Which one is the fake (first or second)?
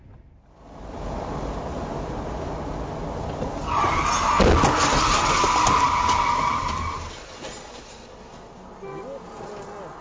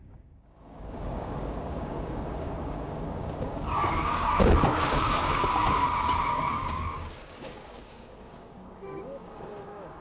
second